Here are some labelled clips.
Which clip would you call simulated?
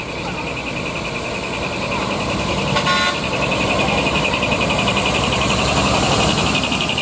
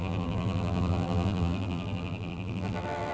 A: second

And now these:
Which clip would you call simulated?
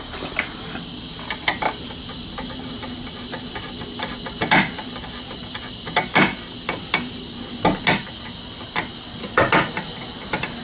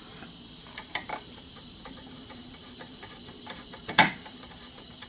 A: second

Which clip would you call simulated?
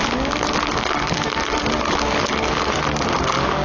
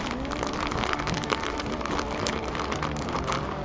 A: second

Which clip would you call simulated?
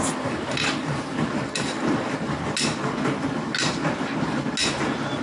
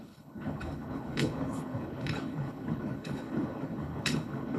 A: second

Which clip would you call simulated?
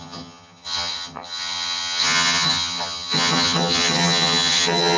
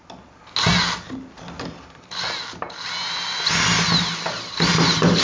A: first